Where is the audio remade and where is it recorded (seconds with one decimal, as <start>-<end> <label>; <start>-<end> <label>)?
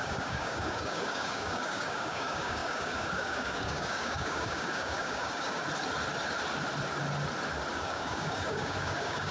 0.0-5.6 remade; 5.6-7.7 recorded; 7.7-9.3 remade